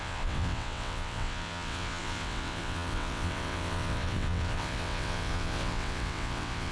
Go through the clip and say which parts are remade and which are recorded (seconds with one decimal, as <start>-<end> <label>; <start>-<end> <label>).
0.0-6.7 remade